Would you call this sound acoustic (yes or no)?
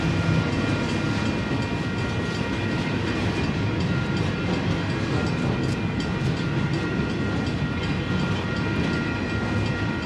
yes